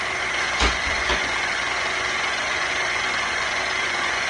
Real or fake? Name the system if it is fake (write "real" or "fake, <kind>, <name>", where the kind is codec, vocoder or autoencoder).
fake, vocoder, Vocos